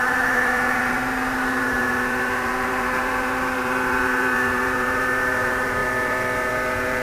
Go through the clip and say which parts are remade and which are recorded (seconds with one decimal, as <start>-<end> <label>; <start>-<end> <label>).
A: 0.0-7.0 remade